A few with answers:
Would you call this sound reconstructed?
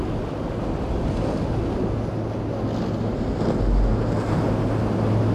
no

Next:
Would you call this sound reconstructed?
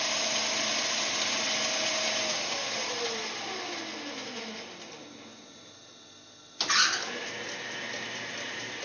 no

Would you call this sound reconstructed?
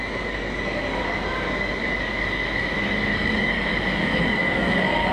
yes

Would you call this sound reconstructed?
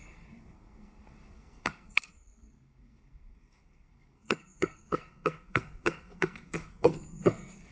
yes